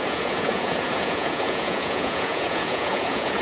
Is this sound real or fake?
fake